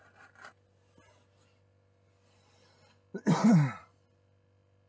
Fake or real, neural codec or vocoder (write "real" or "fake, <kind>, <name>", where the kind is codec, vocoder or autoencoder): real